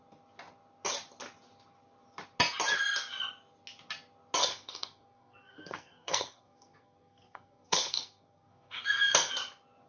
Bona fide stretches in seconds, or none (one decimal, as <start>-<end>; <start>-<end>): 0.0-4.4; 9.3-9.9